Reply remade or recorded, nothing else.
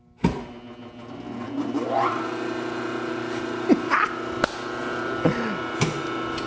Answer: recorded